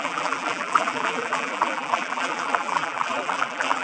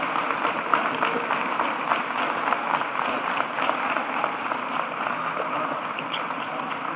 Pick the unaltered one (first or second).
second